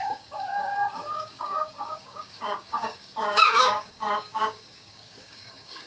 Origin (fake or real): fake